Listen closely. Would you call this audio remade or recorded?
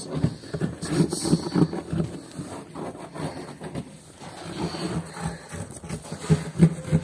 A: recorded